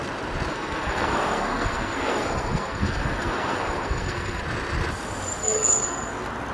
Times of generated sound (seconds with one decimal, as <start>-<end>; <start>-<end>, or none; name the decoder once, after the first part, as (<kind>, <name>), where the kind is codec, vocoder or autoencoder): 0.5-4.4 (codec, SNAC); 5.4-6.1

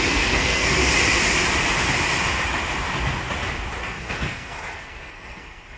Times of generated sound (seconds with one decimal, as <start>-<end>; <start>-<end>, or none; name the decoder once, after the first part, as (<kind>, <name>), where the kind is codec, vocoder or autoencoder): 0.0-0.8 (codec, SNAC); 3.8-5.8

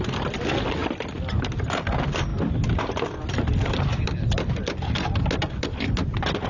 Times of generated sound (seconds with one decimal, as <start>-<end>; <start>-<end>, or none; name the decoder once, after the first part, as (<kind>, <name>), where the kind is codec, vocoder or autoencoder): none

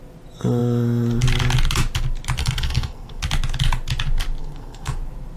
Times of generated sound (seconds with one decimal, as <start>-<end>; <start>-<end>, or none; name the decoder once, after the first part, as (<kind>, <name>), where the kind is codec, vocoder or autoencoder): 2.4-3.2 (codec, SNAC); 4.4-5.0

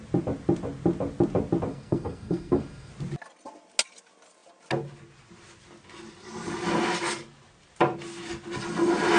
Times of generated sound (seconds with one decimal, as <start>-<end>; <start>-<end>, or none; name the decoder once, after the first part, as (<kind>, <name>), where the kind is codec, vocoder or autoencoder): 1.7-2.9 (codec, SNAC)

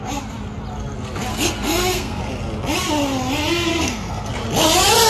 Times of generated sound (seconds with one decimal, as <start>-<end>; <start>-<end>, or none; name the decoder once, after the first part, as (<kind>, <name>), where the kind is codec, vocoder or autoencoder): 1.3-2.2 (codec, SNAC); 3.7-4.3

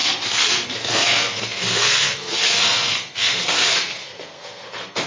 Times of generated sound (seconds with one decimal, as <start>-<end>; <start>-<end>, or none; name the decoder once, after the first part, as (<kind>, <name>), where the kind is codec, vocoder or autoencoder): 0.0-5.1 (codec, SNAC)

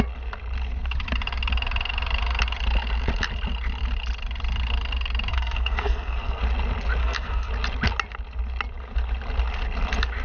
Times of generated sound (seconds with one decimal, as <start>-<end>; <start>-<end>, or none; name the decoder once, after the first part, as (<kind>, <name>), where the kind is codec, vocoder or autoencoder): 5.3-6.4 (codec, SNAC); 7.0-7.5